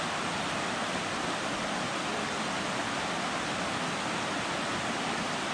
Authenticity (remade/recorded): recorded